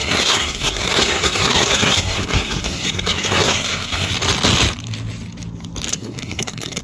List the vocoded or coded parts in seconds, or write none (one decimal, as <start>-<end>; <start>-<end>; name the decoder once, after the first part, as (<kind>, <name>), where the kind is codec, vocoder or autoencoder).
0.0-4.1 (codec, SNAC); 5.9-6.8